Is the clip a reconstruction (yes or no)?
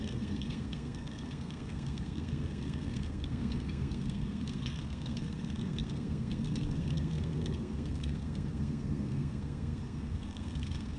yes